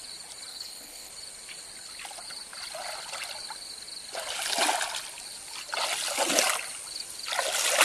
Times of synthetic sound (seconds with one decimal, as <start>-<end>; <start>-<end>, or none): 0.5-1.1